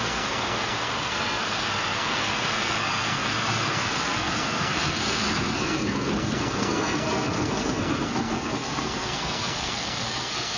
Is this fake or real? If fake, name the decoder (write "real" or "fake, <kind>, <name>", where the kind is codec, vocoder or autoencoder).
fake, codec, SNAC